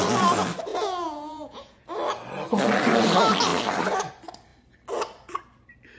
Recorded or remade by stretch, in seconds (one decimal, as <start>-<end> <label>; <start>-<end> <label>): 0.0-0.7 recorded; 0.7-1.9 remade; 1.9-6.0 recorded